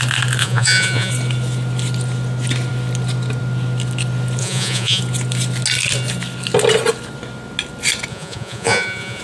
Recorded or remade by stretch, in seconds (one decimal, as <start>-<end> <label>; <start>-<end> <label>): 0.0-0.4 recorded; 0.4-1.1 remade; 1.1-4.4 recorded; 4.4-5.0 remade; 5.0-8.1 recorded; 8.1-9.2 remade